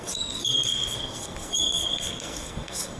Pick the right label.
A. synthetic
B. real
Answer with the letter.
A